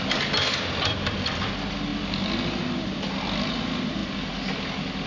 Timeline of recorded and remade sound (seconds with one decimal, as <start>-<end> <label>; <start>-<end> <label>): 0.0-5.1 recorded